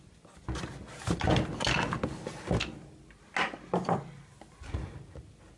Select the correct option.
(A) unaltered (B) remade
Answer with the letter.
A